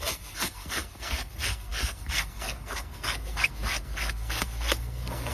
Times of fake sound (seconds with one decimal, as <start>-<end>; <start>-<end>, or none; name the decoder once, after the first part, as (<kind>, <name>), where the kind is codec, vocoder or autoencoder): 0.0-5.3 (codec, SNAC)